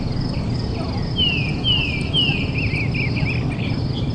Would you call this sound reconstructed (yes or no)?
yes